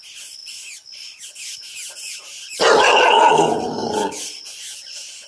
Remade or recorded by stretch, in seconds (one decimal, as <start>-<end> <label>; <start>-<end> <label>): 0.0-5.3 recorded